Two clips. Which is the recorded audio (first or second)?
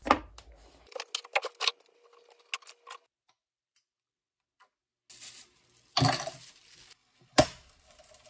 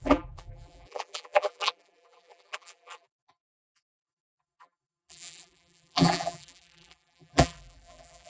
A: first